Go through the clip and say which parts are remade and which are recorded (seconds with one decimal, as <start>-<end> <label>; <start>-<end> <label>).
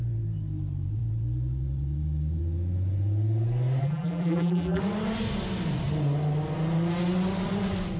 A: 0.0-3.8 recorded; 3.8-4.8 remade; 4.8-8.0 recorded